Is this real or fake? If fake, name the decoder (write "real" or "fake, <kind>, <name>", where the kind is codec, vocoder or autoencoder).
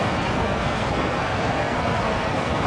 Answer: fake, codec, SNAC